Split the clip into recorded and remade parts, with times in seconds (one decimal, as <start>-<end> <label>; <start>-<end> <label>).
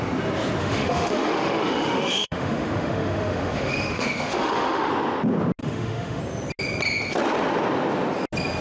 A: 0.0-0.6 recorded; 0.6-4.9 remade; 4.9-5.6 recorded; 5.6-6.2 remade; 6.2-8.6 recorded